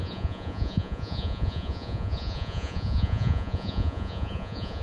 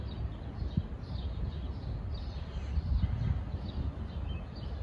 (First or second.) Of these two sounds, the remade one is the first